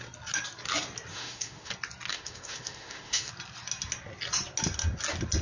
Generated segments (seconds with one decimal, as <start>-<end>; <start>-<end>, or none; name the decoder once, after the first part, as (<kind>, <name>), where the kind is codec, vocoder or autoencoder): 1.1-1.7 (autoencoder, DAC-VAE); 2.1-3.3